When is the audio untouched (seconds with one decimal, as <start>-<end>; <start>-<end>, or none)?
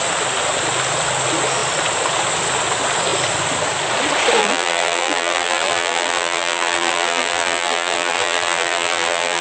0.0-4.4